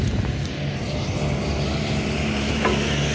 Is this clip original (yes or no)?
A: yes